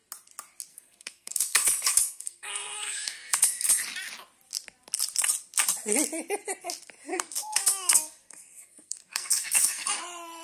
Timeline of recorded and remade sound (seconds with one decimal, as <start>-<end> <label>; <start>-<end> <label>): 0.0-0.7 recorded; 0.7-3.7 remade; 3.7-7.1 recorded; 7.1-10.0 remade; 10.0-10.4 recorded